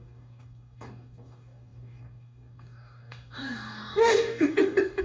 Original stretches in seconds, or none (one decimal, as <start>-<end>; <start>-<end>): none